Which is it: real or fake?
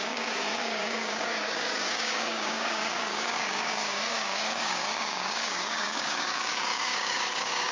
fake